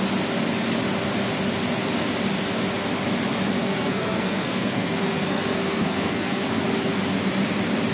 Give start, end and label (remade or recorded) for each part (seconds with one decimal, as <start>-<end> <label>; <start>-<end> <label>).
0.0-3.6 recorded; 3.6-6.4 remade; 6.4-7.9 recorded